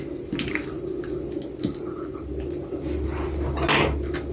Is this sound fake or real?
real